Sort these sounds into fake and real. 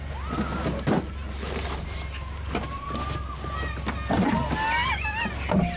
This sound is real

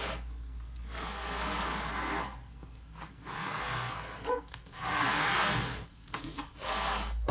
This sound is fake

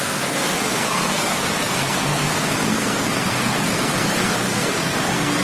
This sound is fake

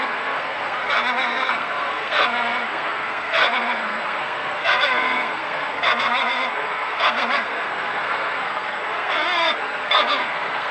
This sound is fake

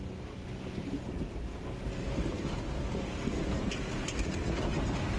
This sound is real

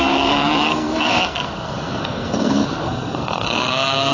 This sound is fake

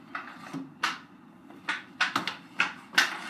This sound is real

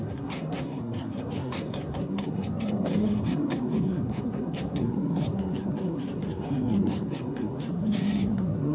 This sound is fake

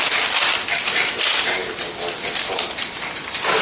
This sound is real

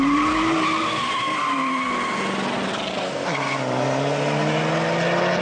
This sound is real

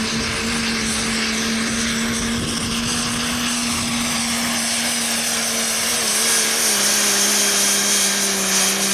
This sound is real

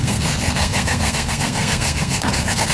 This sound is fake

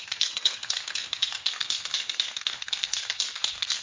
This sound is fake